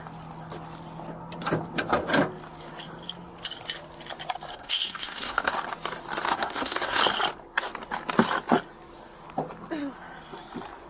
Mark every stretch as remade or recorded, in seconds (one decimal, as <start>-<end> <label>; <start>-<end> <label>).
0.0-4.5 recorded; 4.5-5.5 remade; 5.5-6.3 recorded; 6.3-7.0 remade; 7.0-10.9 recorded